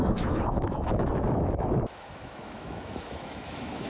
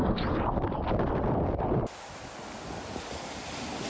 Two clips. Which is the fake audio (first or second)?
first